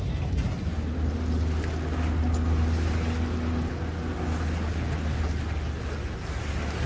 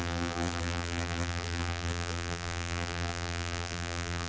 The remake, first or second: second